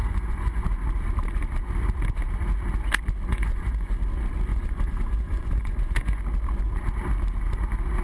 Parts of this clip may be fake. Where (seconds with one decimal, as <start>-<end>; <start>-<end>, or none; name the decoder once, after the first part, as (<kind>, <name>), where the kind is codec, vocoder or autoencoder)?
0.0-0.6 (vocoder, Vocos); 3.3-4.0; 4.5-6.2